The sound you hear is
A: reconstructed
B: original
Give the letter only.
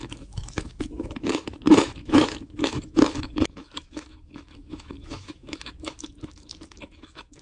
A